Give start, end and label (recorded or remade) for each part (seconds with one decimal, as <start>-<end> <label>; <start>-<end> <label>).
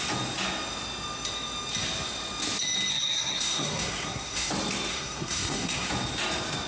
0.0-2.9 recorded; 2.9-4.5 remade; 4.5-4.9 recorded; 4.9-5.9 remade; 5.9-6.7 recorded